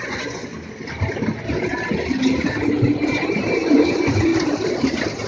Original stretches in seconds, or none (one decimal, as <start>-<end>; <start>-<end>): 0.5-3.7; 4.3-5.3